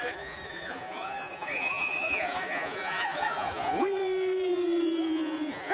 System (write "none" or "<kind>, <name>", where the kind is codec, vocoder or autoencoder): vocoder, Vocos